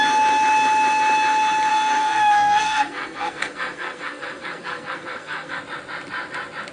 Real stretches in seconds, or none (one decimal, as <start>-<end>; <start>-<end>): 0.0-1.7; 5.6-6.7